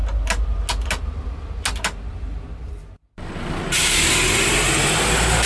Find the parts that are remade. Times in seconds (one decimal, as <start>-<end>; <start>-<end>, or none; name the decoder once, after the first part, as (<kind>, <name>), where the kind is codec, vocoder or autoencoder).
none